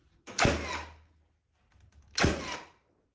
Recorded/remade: recorded